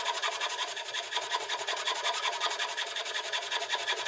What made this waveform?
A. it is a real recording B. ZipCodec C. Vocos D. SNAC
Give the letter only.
C